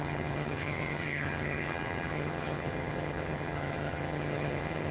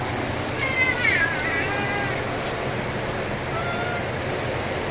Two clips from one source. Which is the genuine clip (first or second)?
second